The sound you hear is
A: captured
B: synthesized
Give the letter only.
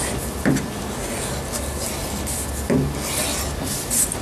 A